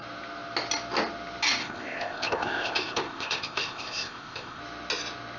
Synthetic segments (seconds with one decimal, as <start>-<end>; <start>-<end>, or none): 1.6-4.6